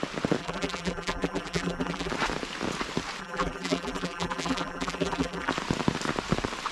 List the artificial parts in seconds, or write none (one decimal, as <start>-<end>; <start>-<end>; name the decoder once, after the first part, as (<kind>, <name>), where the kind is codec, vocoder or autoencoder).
0.4-2.1 (vocoder, BigVGAN v2); 3.2-5.5